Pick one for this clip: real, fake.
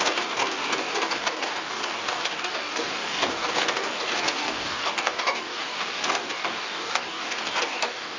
fake